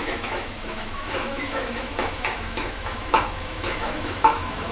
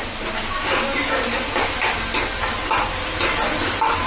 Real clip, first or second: second